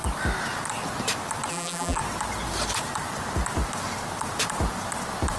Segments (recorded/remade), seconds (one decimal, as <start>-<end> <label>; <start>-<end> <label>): 0.0-1.5 recorded; 1.5-2.0 remade; 2.0-5.4 recorded